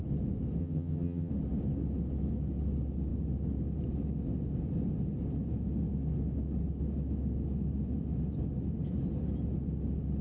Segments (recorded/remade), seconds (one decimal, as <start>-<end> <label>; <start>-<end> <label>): 0.0-0.6 recorded; 0.6-1.3 remade; 1.3-10.2 recorded